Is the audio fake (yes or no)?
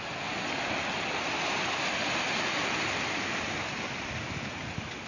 no